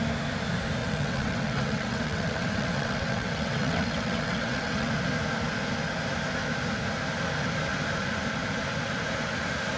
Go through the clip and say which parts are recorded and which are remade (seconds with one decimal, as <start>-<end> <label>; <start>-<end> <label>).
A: 0.0-0.8 recorded; 0.8-4.9 remade; 4.9-9.8 recorded